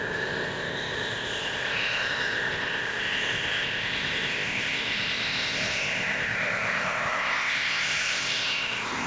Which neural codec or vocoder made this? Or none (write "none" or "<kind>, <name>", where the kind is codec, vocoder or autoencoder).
codec, ZipCodec